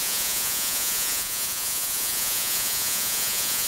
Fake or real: fake